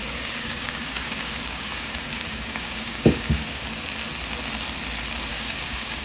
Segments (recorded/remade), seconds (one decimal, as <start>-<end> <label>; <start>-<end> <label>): 0.0-3.6 remade; 3.6-5.3 recorded; 5.3-6.0 remade